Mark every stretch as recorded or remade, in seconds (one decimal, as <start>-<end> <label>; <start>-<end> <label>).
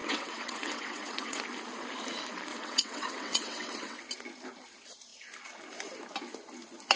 0.0-1.4 remade; 1.4-2.5 recorded; 2.5-4.0 remade; 4.0-7.0 recorded